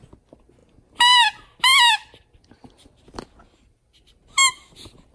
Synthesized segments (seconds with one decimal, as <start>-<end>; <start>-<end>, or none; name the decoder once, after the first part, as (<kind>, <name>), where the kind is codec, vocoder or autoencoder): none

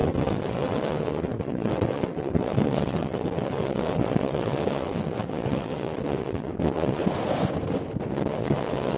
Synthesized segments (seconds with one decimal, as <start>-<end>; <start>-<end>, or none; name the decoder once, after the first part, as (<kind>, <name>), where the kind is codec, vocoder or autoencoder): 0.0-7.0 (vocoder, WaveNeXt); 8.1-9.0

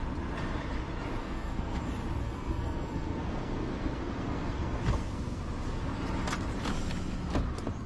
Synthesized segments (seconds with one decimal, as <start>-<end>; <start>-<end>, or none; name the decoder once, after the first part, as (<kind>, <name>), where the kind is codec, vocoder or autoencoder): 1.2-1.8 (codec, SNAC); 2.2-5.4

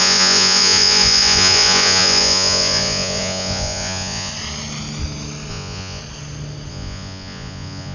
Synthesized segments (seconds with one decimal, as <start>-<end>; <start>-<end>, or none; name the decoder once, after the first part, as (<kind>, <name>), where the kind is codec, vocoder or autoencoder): 0.0-4.3 (vocoder, Vocos); 5.5-6.0; 6.7-7.9

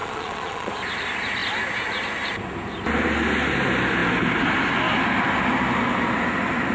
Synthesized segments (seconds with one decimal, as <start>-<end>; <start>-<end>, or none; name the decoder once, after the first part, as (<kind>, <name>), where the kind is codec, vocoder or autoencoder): 0.0-0.7 (vocoder, Vocos)